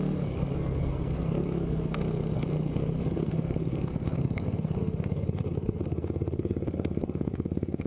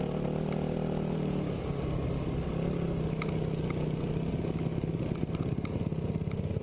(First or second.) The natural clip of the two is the second